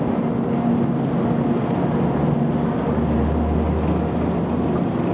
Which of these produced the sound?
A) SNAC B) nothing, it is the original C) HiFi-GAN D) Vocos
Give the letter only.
B